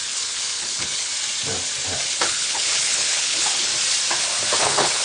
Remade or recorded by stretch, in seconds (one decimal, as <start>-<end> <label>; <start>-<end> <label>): 0.0-1.1 remade; 1.1-2.1 recorded; 2.1-3.7 remade; 3.7-4.6 recorded; 4.6-5.0 remade